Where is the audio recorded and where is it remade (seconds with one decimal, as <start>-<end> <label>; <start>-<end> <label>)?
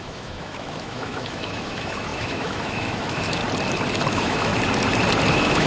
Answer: 0.0-3.4 remade; 3.4-4.1 recorded; 4.1-4.5 remade; 4.5-5.3 recorded; 5.3-5.7 remade